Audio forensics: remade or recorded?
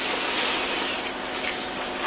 recorded